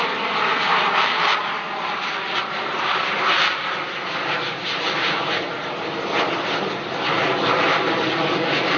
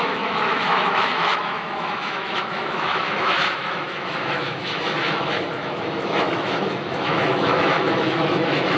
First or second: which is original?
first